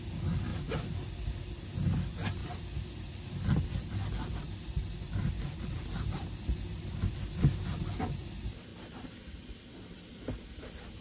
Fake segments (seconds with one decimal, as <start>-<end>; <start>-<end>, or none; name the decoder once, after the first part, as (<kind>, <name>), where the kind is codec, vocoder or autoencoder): 0.5-1.1 (vocoder, BigVGAN v2); 8.7-10.6

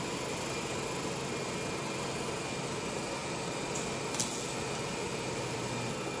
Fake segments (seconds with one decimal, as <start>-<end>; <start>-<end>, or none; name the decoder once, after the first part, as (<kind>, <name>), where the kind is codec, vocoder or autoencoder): none

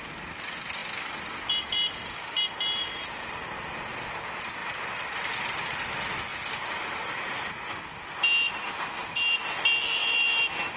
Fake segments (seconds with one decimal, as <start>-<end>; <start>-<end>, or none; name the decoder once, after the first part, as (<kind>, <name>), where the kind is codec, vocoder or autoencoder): 6.3-7.7 (vocoder, BigVGAN v2)

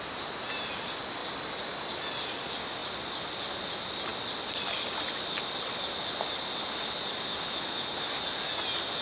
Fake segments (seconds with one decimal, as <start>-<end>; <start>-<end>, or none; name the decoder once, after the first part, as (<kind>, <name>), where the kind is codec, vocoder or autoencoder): 1.2-1.9 (vocoder, BigVGAN v2); 4.1-5.8

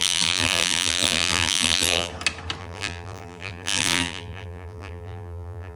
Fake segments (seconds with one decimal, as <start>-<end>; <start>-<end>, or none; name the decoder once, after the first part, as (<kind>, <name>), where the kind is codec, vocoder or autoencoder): 0.0-2.1 (vocoder, BigVGAN v2); 2.6-5.8

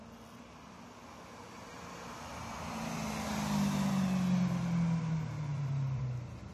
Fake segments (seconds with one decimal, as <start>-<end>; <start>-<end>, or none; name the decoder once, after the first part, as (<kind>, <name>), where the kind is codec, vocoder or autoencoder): 5.5-6.0 (vocoder, BigVGAN v2)